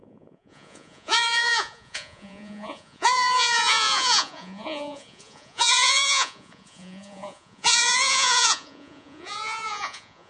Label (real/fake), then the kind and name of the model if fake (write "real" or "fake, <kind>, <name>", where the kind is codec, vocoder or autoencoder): fake, vocoder, Vocos